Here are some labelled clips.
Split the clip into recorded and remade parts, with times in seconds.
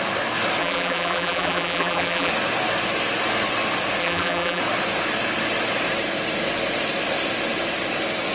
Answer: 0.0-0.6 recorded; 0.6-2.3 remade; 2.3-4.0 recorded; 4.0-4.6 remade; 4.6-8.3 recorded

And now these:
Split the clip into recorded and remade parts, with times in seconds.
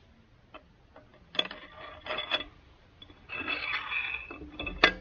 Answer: 0.0-5.0 recorded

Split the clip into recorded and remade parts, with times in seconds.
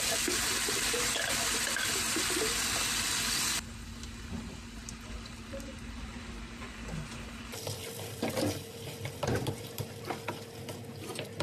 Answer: 0.0-4.8 recorded; 4.8-10.0 remade; 10.0-11.4 recorded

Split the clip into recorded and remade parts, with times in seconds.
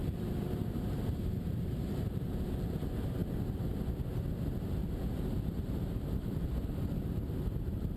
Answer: 0.0-3.2 remade; 3.2-4.7 recorded; 4.7-8.0 remade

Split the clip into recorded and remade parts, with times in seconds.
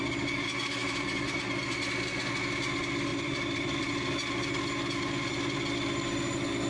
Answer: 0.0-0.8 recorded; 0.8-1.4 remade; 1.4-3.1 recorded; 3.1-4.1 remade; 4.1-6.7 recorded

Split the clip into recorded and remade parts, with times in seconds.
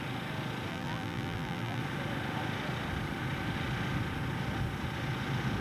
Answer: 0.0-0.7 recorded; 0.7-1.8 remade; 1.8-5.6 recorded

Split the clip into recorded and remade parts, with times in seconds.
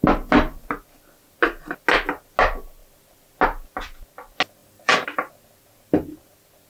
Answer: 0.0-4.6 recorded; 4.6-5.3 remade; 5.3-6.7 recorded